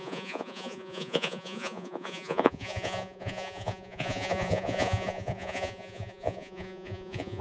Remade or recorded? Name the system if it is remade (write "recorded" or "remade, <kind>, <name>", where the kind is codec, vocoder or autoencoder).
remade, vocoder, Vocos